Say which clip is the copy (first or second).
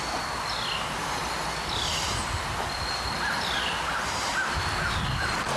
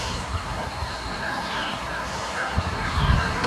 second